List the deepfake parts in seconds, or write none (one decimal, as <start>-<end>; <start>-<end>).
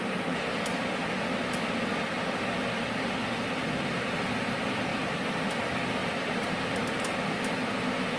6.0-6.7